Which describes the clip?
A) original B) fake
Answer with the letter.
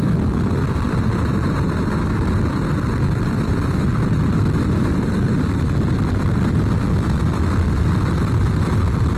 A